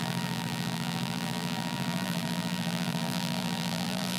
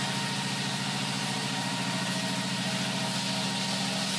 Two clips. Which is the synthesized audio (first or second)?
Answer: first